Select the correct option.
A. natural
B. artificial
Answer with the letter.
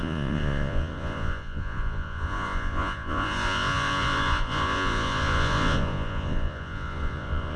B